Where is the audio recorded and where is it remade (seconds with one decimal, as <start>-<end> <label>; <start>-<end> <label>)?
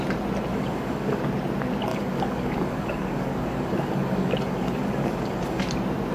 0.0-0.5 recorded; 0.5-1.2 remade; 1.2-1.9 recorded; 1.9-5.6 remade; 5.6-6.1 recorded